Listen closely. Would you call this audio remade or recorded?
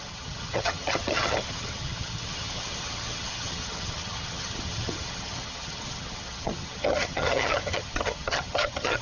remade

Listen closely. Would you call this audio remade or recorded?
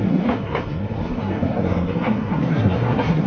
remade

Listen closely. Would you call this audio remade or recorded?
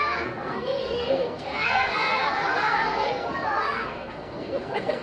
remade